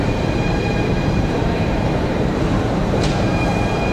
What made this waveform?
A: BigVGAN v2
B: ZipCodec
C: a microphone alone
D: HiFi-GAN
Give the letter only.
A